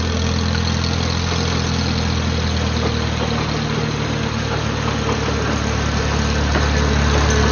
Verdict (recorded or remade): recorded